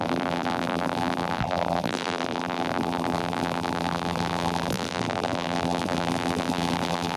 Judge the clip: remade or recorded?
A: remade